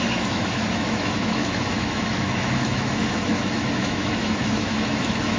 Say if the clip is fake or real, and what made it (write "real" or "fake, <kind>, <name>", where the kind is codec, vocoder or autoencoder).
fake, autoencoder, DAC-VAE